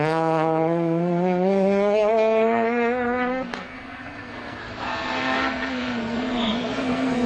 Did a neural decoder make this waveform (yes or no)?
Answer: yes